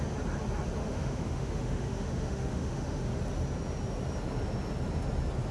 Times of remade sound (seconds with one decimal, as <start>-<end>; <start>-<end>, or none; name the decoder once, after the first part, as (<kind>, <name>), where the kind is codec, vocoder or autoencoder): 0.8-3.2 (autoencoder, DAC-VAE)